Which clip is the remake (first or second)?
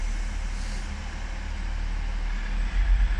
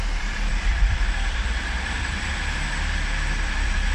second